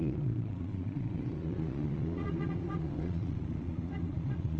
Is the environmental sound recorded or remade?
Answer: remade